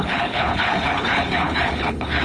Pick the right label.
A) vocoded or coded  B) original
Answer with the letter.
A